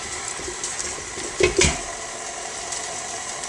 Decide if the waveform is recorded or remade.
recorded